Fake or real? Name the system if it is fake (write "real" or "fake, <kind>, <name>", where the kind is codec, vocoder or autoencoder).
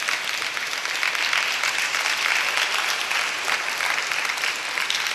real